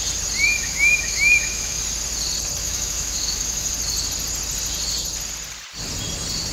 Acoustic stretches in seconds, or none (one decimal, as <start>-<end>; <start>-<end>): 0.0-0.5; 1.8-2.6; 3.7-6.5